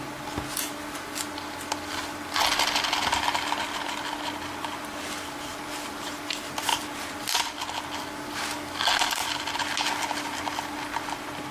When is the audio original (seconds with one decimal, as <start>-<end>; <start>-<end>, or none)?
0.0-11.5